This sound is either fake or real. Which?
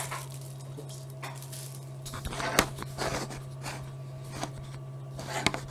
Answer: real